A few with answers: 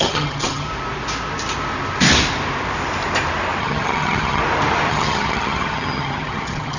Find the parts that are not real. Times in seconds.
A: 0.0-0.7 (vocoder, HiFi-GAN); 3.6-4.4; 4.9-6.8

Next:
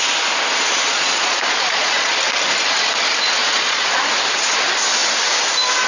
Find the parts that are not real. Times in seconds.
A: 0.9-2.1 (vocoder, Vocos); 3.4-4.0